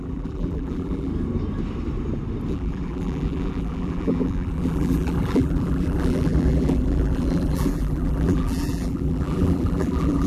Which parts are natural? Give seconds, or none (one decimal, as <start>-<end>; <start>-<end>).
1.1-2.5